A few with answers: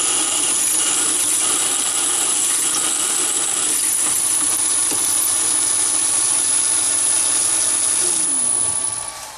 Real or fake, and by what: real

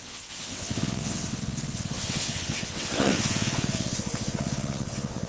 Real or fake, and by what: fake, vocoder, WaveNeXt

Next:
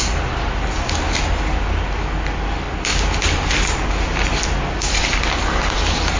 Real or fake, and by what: real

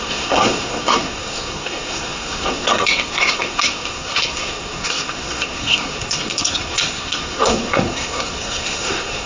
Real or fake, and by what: fake, codec, SNAC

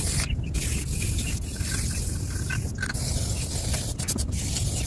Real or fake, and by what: real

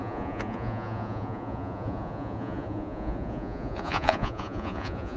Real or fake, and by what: fake, vocoder, Vocos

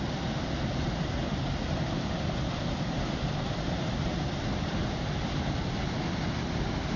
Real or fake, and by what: real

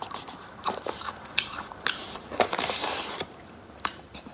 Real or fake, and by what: fake, vocoder, BigVGAN v2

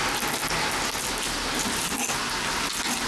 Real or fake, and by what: real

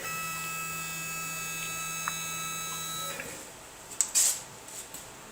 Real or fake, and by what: real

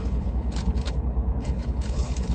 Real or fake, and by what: fake, codec, HILCodec